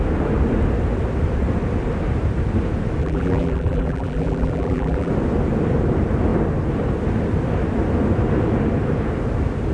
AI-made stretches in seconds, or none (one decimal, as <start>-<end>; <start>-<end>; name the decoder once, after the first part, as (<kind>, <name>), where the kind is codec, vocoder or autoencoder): 3.0-5.1 (vocoder, BigVGAN v2)